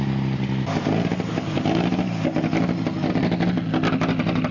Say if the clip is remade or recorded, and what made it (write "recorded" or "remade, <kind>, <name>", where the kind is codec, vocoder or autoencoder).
recorded